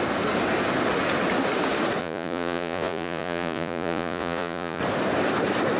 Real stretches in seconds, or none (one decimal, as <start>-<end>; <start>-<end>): 0.0-2.0; 4.8-5.8